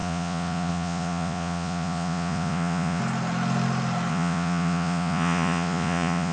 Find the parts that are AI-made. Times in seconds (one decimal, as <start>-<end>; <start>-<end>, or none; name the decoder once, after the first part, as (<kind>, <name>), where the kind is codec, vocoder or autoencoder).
0.0-3.0 (vocoder, Vocos); 4.1-6.3